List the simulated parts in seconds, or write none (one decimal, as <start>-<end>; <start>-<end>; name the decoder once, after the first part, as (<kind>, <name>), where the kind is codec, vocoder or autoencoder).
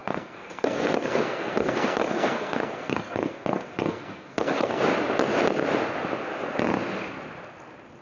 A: 0.0-4.8 (codec, SNAC)